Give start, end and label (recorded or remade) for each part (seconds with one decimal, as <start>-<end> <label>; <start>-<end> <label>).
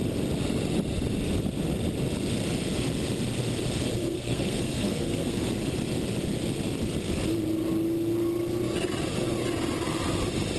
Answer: 0.0-4.0 recorded; 4.0-5.5 remade; 5.5-10.6 recorded